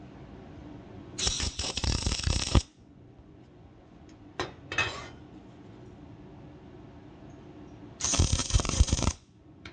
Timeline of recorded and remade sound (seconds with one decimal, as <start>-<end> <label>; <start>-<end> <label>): 0.0-0.6 recorded; 0.6-2.1 remade; 2.1-2.5 recorded; 2.5-5.9 remade; 5.9-8.4 recorded; 8.4-9.7 remade